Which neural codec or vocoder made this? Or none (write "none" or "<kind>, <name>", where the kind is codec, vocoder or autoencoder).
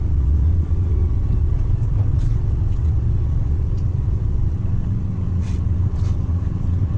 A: vocoder, WaveNeXt